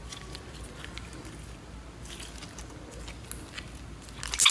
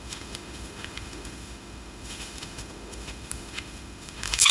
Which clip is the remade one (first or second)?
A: second